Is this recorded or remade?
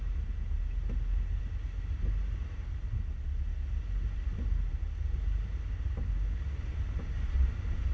recorded